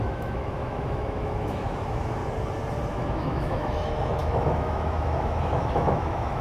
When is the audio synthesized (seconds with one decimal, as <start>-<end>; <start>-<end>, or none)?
0.0-2.2; 2.9-6.4